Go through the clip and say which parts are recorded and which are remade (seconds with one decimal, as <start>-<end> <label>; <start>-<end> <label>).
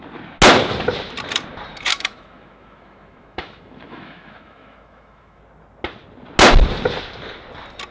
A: 0.0-1.9 recorded; 1.9-5.4 remade; 5.4-7.9 recorded